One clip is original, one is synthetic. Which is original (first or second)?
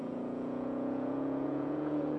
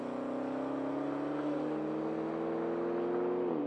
second